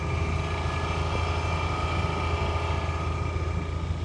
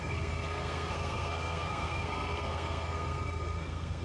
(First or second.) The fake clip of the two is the second